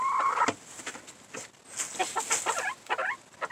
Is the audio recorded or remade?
recorded